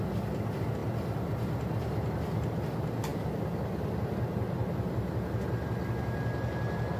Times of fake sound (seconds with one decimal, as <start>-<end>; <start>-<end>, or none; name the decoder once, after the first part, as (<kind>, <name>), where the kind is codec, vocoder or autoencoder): none